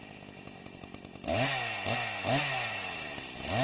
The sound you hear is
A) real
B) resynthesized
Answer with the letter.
A